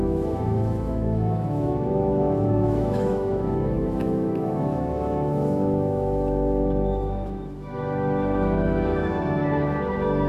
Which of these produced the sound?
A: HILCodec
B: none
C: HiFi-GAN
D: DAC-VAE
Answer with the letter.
D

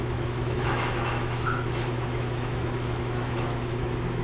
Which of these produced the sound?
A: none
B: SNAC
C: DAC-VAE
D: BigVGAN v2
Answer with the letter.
C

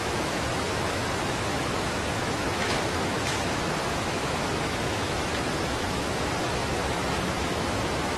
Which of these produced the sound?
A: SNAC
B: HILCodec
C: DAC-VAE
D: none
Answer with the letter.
C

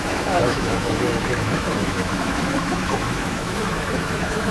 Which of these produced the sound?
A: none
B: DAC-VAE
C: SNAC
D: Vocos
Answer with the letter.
B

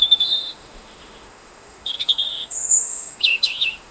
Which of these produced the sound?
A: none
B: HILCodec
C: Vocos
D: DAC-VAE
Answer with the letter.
D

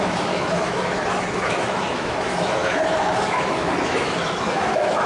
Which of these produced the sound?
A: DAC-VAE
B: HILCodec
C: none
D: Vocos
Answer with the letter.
A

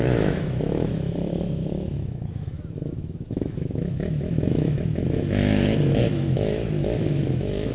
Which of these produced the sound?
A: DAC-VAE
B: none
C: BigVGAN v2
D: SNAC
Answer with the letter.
A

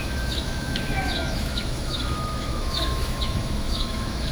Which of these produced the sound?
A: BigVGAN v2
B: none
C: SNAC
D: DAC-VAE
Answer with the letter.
D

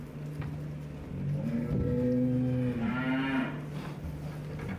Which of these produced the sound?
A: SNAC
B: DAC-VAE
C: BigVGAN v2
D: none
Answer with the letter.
D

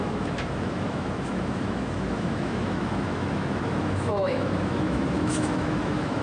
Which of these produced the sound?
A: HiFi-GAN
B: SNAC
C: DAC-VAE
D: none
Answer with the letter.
C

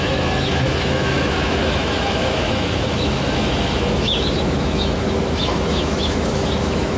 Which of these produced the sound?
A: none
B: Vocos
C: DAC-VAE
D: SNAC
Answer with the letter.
C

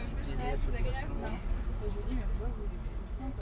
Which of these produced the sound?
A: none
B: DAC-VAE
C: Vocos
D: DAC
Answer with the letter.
A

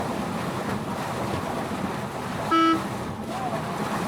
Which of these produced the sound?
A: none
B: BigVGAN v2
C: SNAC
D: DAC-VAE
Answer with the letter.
A